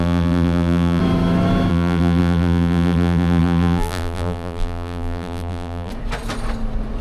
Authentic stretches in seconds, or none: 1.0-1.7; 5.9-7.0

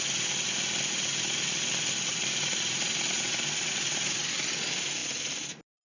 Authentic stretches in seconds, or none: 0.0-2.1; 4.2-5.8

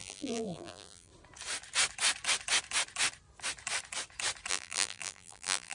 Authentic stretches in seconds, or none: 1.1-4.5

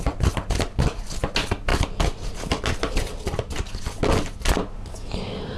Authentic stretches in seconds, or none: 0.0-5.6